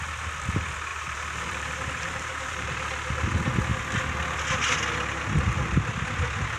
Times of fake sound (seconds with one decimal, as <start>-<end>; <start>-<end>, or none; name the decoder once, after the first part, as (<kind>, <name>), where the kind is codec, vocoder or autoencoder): 0.9-2.7 (vocoder, BigVGAN v2)

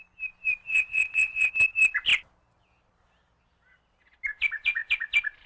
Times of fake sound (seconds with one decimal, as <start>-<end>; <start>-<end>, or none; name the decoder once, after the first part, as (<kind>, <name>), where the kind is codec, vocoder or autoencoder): 0.7-1.5 (vocoder, WaveNeXt)

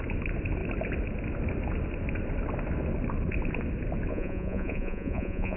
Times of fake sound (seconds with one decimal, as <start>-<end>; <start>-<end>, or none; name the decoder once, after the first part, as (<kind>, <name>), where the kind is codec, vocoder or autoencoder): 4.1-5.6 (vocoder, Vocos)

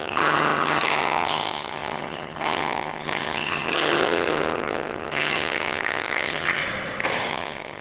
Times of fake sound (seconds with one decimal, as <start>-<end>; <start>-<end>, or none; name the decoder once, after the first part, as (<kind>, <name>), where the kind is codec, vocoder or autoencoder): 0.0-6.6 (vocoder, HiFi-GAN); 7.3-7.8

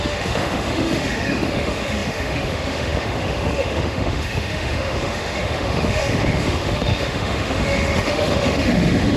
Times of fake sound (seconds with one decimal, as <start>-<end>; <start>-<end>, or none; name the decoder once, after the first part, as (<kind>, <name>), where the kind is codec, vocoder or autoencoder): 0.0-9.2 (autoencoder, DAC-VAE)

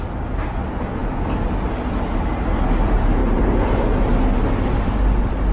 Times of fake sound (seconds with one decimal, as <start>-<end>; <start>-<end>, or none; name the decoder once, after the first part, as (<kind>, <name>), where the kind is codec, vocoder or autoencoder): 3.2-3.9 (vocoder, BigVGAN v2)